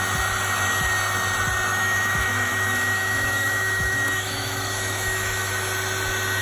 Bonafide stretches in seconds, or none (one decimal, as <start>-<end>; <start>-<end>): 0.0-1.7; 5.5-6.4